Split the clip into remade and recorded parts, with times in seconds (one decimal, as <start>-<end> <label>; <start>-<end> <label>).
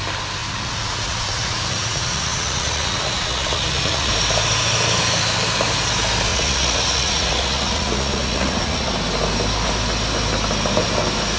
0.0-0.4 recorded; 0.4-4.1 remade; 4.1-6.3 recorded; 6.3-8.9 remade; 8.9-11.4 recorded